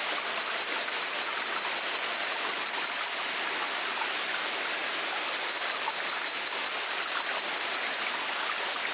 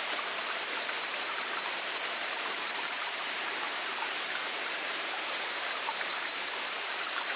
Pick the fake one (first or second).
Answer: second